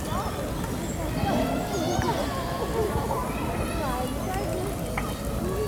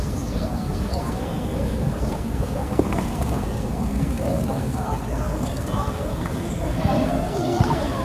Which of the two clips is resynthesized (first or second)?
second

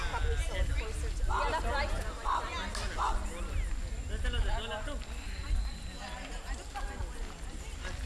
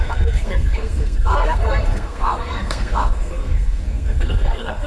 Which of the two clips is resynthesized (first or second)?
second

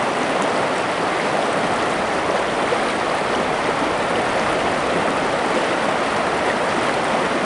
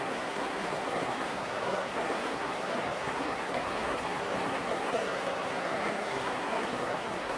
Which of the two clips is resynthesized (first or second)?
second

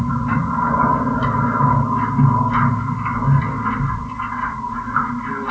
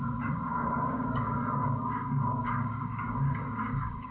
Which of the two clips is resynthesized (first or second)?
second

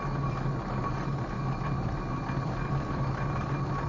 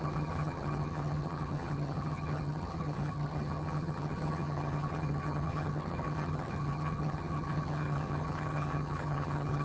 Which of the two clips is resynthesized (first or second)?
second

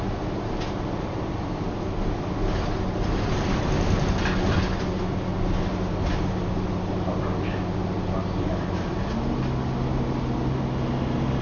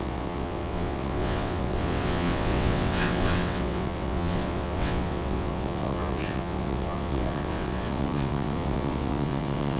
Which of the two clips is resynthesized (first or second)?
second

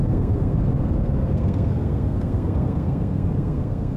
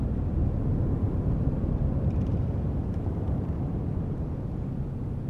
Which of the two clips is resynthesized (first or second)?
first